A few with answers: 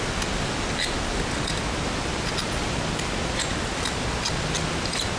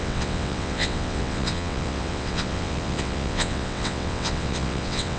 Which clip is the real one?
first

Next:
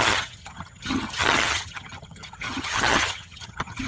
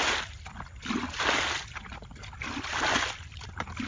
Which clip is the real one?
second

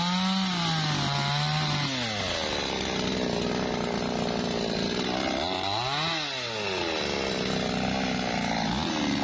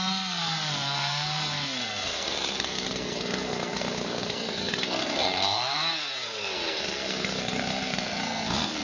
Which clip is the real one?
first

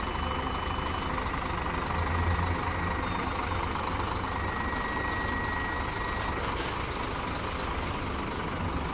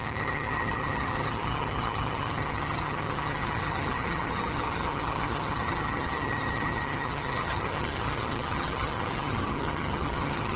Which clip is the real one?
first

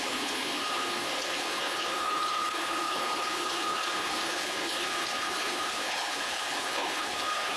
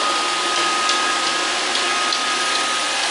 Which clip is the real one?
second